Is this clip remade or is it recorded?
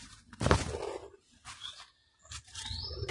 recorded